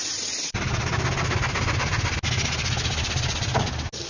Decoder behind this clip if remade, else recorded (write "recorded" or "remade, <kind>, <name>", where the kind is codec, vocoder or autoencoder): recorded